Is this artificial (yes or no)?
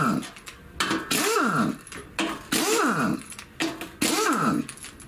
no